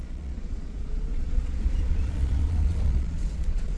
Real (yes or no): no